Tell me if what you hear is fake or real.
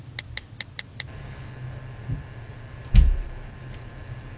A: real